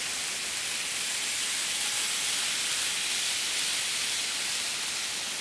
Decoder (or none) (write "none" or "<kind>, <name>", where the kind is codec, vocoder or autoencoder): none